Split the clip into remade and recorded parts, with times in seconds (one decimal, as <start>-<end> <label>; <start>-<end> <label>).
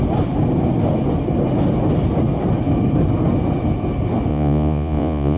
0.0-4.3 recorded; 4.3-5.4 remade